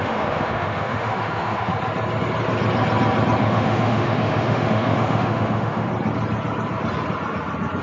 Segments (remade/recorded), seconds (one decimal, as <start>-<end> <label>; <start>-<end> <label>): 0.0-1.7 remade; 1.7-3.4 recorded; 3.4-5.9 remade; 5.9-7.8 recorded